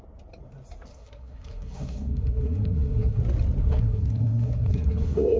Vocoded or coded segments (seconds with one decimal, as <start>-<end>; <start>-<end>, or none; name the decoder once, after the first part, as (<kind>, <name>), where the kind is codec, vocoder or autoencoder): 0.9-3.2 (codec, SNAC); 3.6-5.4